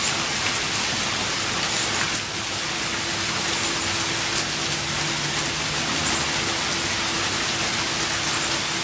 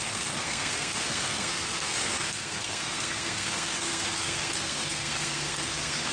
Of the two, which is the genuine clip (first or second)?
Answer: first